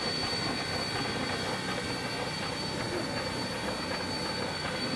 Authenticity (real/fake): real